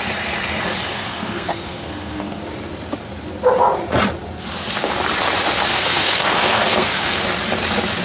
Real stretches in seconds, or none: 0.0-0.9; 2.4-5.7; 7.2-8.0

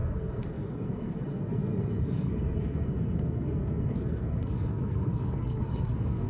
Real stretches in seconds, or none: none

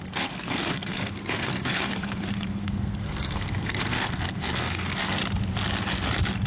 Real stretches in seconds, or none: 5.2-6.5

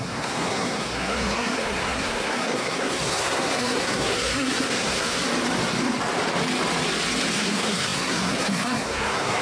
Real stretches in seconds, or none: 5.2-7.3